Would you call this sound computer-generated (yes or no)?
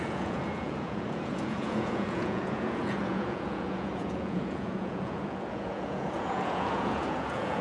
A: yes